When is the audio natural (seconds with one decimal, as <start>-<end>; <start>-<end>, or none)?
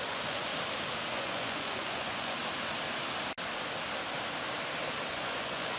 0.5-1.1; 2.4-5.1